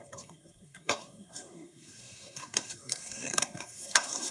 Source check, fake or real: fake